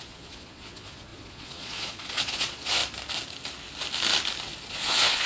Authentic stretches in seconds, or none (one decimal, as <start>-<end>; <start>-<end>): 2.8-4.7